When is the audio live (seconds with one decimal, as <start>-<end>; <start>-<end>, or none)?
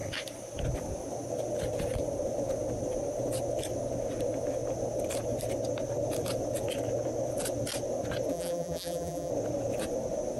0.0-8.3; 9.3-10.4